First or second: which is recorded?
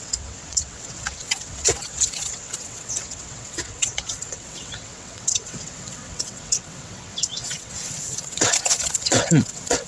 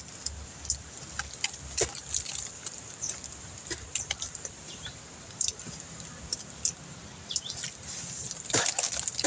second